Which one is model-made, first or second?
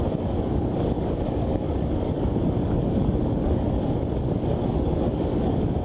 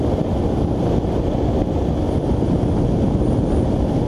first